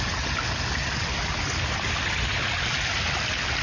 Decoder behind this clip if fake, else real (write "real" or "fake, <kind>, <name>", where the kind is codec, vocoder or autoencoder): real